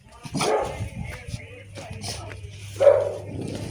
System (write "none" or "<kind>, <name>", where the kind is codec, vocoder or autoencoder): none